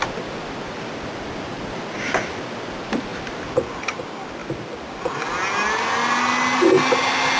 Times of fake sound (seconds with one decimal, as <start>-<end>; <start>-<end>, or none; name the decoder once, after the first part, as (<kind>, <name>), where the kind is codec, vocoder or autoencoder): none